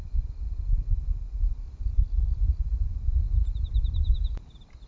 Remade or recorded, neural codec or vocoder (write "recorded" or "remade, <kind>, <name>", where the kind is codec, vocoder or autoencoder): recorded